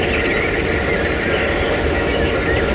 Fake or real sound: real